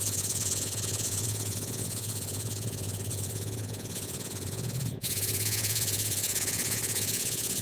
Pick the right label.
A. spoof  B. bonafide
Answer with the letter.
A